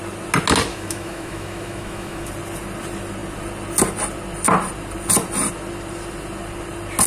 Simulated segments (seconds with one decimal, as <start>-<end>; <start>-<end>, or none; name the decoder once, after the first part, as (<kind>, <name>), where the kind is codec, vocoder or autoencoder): 0.7-2.3 (autoencoder, DAC-VAE)